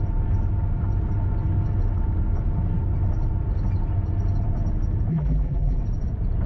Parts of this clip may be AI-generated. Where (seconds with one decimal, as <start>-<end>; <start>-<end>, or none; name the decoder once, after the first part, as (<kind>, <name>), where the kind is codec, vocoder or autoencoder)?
5.1-5.8 (vocoder, BigVGAN v2)